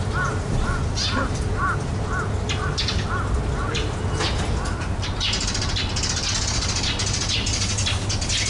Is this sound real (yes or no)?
yes